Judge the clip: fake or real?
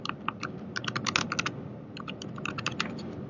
real